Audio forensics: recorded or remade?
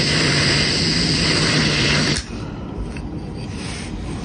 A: recorded